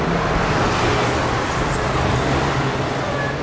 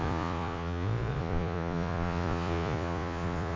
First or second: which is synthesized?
second